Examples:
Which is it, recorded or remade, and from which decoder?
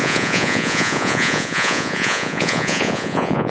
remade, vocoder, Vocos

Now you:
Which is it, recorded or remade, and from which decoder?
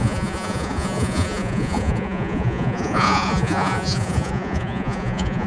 remade, vocoder, Vocos